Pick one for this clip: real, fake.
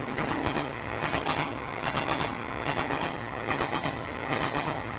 fake